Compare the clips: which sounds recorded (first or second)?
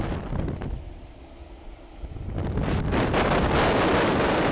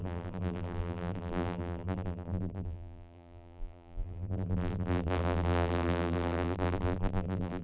first